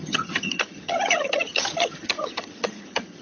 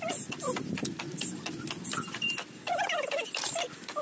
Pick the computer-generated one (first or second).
first